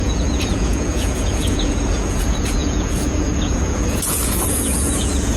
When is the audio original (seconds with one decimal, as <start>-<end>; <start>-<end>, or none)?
none